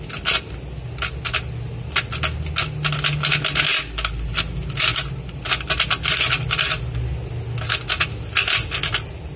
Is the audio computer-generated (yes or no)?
no